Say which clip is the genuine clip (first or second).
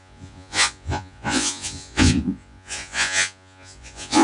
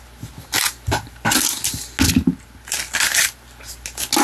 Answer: second